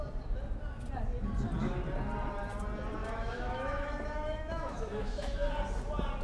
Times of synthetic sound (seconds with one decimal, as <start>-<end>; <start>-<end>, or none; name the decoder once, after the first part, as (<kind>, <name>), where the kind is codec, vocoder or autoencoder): 3.0-5.5 (autoencoder, DAC-VAE)